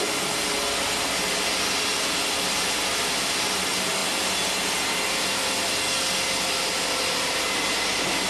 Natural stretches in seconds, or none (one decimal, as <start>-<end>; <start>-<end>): 0.0-8.3